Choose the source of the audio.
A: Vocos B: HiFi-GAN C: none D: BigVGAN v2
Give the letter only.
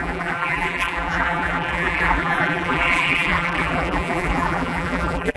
D